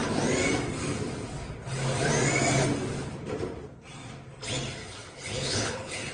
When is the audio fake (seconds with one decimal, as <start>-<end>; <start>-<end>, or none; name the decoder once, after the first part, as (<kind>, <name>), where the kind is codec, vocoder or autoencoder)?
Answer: 4.8-6.1 (codec, HILCodec)